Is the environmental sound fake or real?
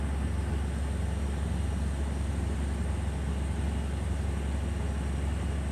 real